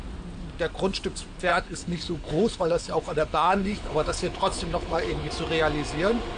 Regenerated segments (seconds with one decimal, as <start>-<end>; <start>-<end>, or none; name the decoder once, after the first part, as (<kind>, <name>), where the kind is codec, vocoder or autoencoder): 1.5-5.3 (codec, HILCodec)